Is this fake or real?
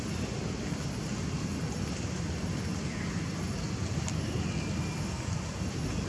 real